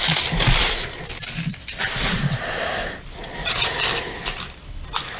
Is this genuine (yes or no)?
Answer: no